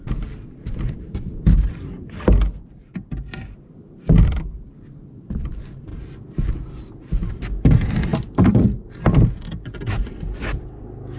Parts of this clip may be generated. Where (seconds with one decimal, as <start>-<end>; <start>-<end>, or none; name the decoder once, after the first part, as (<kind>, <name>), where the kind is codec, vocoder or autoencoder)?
none